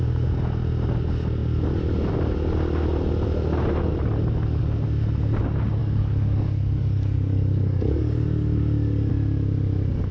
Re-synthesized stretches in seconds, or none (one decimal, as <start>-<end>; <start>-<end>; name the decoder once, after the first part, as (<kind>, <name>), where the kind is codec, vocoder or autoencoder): 5.8-9.1 (codec, DAC)